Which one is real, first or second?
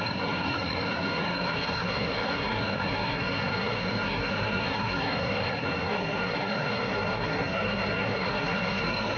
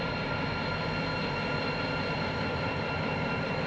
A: second